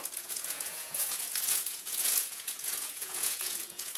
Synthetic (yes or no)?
yes